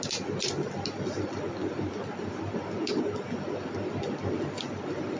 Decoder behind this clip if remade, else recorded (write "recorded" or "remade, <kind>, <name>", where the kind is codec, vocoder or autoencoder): recorded